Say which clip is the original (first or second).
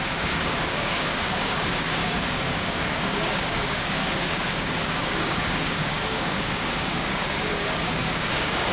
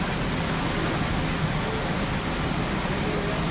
second